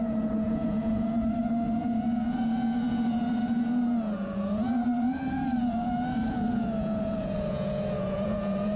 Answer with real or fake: fake